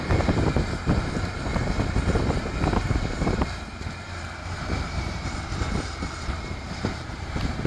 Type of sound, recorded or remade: remade